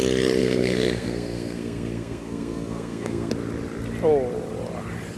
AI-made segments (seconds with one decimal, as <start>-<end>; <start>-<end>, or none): 0.4-3.3